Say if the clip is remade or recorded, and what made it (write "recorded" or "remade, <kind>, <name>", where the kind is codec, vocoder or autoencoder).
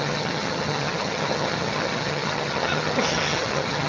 remade, vocoder, HiFi-GAN